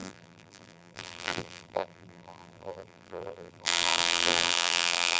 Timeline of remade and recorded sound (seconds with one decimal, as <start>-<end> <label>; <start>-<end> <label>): 0.0-5.2 remade